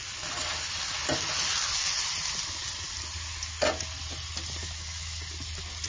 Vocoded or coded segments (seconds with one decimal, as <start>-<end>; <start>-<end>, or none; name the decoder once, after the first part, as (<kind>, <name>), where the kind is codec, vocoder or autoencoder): 4.6-5.2 (autoencoder, DAC-VAE)